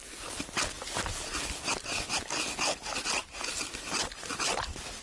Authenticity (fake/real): real